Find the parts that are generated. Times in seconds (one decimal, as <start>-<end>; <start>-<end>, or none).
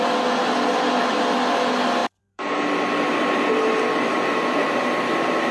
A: 2.0-2.5